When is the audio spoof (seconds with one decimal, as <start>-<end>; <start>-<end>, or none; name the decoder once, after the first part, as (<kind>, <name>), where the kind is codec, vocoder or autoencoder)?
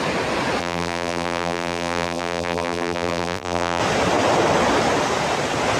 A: 0.6-3.8 (vocoder, BigVGAN v2)